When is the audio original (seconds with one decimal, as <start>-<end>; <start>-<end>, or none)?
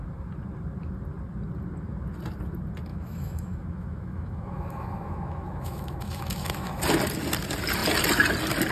0.0-2.9; 6.8-8.7